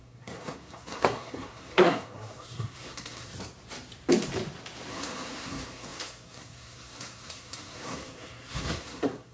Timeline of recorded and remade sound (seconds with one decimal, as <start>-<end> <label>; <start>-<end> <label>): 0.0-3.3 remade; 3.3-4.9 recorded; 4.9-9.3 remade